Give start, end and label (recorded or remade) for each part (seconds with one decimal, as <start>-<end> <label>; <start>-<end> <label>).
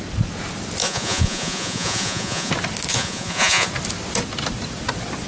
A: 0.0-0.8 recorded; 0.8-2.5 remade; 2.5-2.9 recorded; 2.9-3.7 remade; 3.7-5.3 recorded